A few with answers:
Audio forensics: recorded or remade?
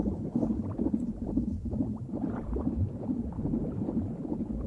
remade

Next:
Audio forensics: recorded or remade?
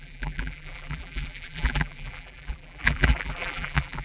remade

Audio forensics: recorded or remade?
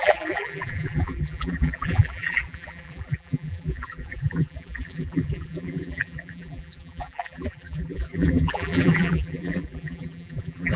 remade